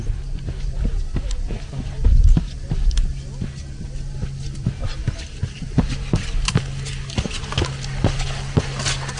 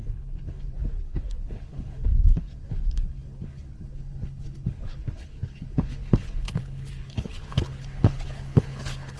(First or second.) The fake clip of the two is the second